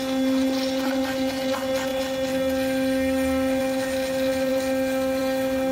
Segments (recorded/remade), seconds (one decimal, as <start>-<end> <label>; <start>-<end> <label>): 0.0-5.7 recorded

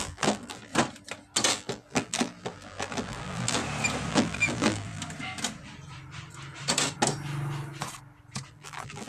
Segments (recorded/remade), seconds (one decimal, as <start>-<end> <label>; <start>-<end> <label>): 0.0-0.7 remade; 0.7-1.5 recorded; 1.5-3.6 remade; 3.6-4.1 recorded; 4.1-5.0 remade; 5.0-8.5 recorded; 8.5-9.1 remade